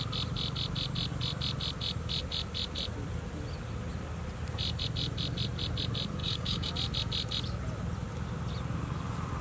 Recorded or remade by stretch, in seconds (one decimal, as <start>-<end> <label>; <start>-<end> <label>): 0.0-6.2 recorded; 6.2-6.7 remade; 6.7-9.4 recorded